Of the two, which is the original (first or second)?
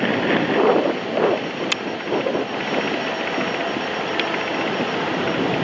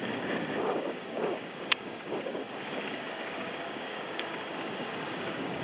first